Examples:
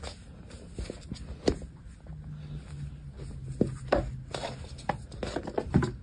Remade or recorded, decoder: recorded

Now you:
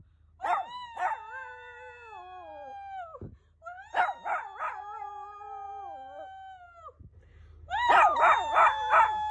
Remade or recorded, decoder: recorded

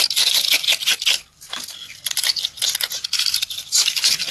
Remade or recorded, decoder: recorded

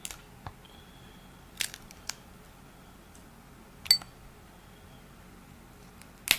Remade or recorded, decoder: recorded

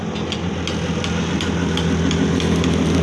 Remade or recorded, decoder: recorded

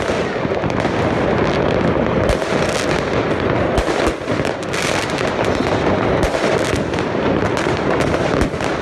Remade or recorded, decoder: recorded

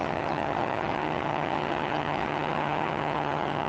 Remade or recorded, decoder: remade, vocoder, HiFi-GAN